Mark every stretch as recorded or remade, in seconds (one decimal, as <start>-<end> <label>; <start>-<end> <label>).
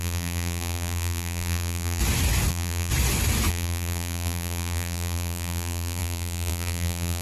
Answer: 0.0-2.0 remade; 2.0-2.5 recorded; 2.5-2.9 remade; 2.9-3.5 recorded; 3.5-7.2 remade